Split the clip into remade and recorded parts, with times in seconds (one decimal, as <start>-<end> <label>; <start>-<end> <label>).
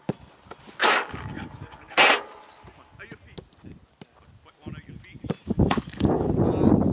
0.0-0.8 recorded; 0.8-1.9 remade; 1.9-5.4 recorded; 5.4-6.3 remade; 6.3-6.9 recorded